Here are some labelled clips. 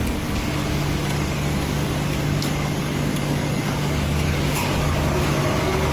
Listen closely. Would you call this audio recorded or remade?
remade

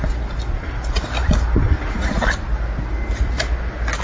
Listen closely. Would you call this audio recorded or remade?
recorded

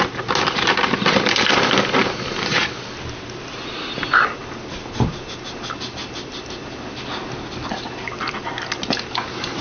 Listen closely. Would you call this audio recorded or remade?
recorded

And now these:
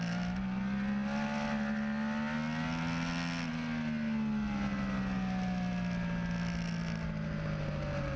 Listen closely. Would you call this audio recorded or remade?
recorded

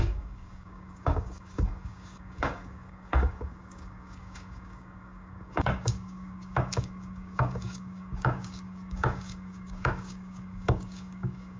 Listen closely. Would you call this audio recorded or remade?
remade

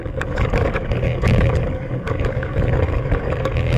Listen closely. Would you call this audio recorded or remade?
remade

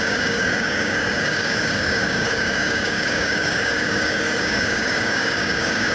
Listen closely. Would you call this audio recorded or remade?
remade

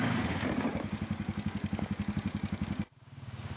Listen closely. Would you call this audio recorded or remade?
remade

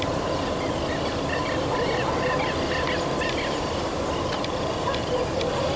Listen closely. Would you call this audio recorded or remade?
recorded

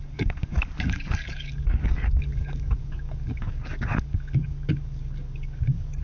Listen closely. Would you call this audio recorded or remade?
remade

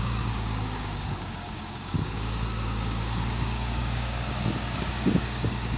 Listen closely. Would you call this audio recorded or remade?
remade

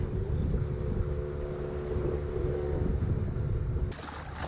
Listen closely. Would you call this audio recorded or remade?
recorded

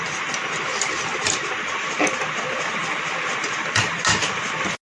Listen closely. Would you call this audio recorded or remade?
recorded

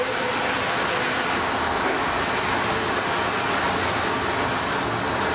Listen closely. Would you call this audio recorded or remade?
recorded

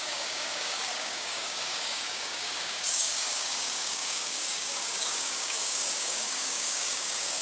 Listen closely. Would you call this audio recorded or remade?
remade